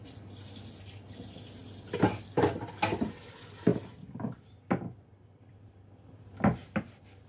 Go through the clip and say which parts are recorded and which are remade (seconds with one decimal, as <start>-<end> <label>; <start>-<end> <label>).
0.0-3.7 recorded; 3.7-6.3 remade; 6.3-7.3 recorded